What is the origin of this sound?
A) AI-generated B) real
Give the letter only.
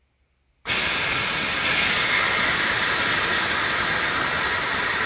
B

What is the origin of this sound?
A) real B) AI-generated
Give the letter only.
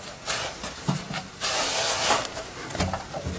A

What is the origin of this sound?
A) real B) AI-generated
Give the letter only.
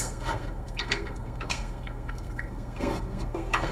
B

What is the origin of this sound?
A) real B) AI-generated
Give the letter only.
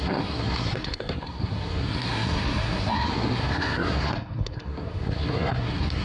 B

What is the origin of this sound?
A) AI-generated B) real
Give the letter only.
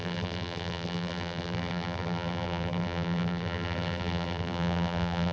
A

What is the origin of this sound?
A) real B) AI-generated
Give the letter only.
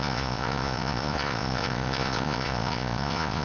B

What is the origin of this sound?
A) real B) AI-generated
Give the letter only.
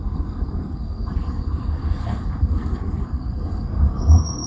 B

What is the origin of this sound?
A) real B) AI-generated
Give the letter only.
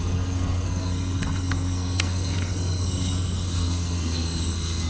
B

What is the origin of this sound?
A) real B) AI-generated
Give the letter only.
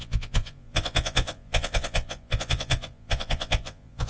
B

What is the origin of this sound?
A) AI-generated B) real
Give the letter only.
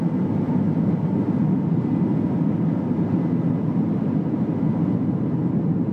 B